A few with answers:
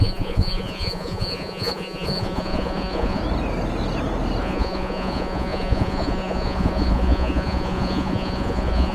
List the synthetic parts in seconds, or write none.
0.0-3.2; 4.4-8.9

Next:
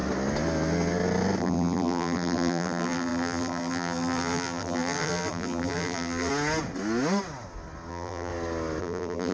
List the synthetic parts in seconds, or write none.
1.4-6.3; 7.9-8.3; 8.8-9.3

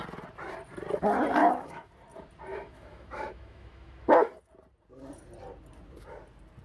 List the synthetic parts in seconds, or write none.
1.4-1.9; 2.5-4.3

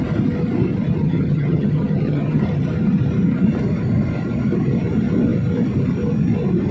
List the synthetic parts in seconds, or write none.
1.0-2.7

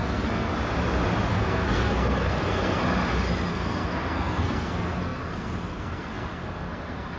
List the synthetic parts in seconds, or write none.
0.0-0.5; 1.3-2.8; 3.5-7.2

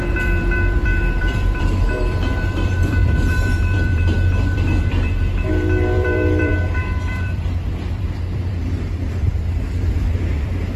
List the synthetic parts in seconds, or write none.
0.0-10.8